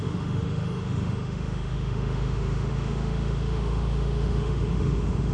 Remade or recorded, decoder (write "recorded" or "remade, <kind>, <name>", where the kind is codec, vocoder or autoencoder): remade, autoencoder, DAC-VAE